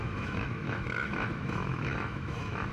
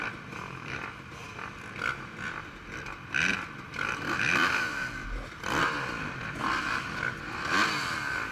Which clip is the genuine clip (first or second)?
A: second